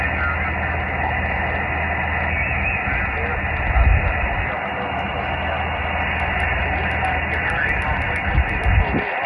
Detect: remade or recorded recorded